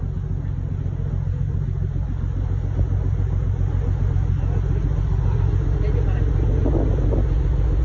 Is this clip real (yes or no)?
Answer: yes